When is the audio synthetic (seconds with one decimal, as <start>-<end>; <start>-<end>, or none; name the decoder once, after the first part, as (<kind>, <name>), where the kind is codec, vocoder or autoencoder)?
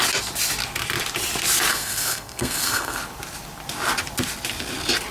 1.7-3.0 (codec, SNAC)